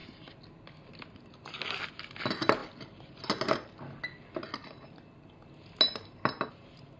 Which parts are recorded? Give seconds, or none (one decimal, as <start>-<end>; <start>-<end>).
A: 0.0-7.0